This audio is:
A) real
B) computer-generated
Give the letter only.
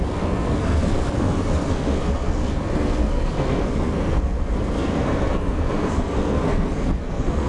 B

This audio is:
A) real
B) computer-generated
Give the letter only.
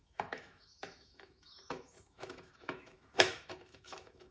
B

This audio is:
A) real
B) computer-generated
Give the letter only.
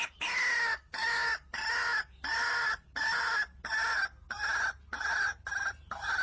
A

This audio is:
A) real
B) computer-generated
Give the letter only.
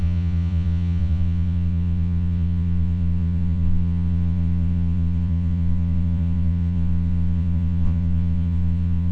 B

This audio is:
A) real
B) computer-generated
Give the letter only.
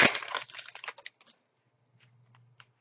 A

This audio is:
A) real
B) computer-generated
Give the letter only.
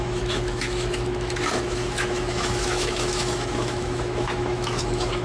B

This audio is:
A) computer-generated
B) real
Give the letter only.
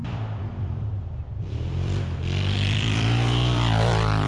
A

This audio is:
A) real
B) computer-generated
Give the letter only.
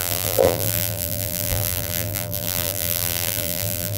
B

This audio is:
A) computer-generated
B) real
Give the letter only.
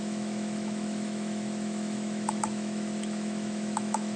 A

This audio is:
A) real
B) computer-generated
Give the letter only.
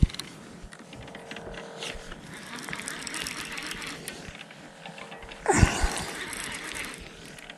A